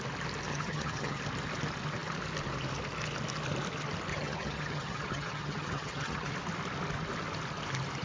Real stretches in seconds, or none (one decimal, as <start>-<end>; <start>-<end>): 0.0-0.5; 1.2-4.1; 6.3-8.0